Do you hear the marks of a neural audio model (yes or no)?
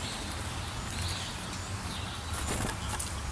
no